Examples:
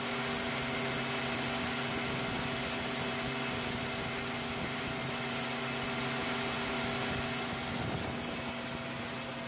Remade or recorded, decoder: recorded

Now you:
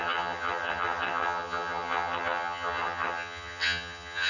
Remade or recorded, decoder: remade, vocoder, HiFi-GAN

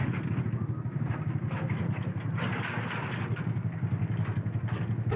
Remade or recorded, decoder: recorded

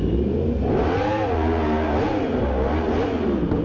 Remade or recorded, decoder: recorded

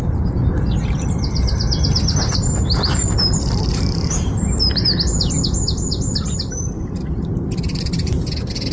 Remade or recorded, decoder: recorded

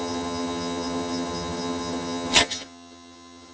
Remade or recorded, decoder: remade, vocoder, HiFi-GAN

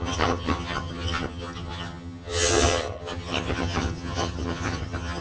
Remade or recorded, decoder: remade, vocoder, HiFi-GAN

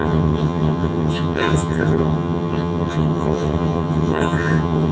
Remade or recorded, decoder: remade, vocoder, HiFi-GAN